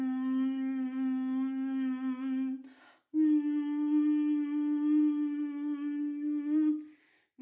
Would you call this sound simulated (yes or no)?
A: no